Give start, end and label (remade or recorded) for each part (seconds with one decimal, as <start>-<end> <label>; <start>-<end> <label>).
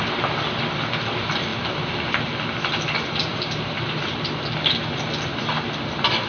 0.0-3.3 recorded; 3.3-4.3 remade; 4.3-6.3 recorded